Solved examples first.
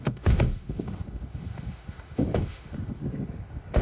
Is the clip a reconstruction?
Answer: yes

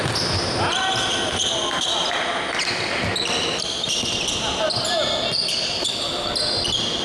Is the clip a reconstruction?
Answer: no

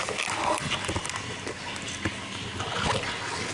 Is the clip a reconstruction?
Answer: no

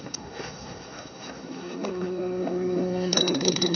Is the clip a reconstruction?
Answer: yes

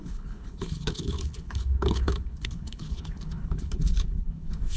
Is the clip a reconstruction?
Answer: yes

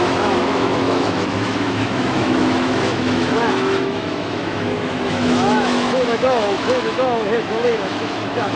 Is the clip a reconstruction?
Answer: yes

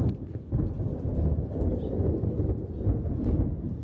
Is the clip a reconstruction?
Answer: no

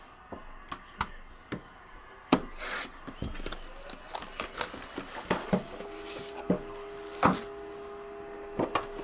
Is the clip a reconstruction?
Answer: no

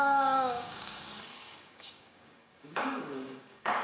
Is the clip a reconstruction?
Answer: yes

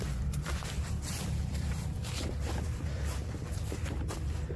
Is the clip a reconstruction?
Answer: yes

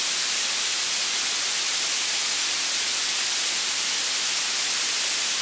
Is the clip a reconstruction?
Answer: no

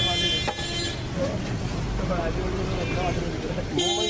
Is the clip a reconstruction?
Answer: no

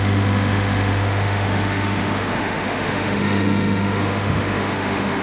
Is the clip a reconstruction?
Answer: yes